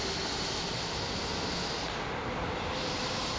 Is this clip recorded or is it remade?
recorded